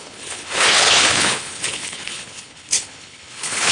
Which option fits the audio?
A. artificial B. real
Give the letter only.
A